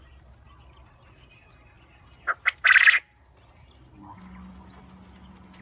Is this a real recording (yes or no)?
yes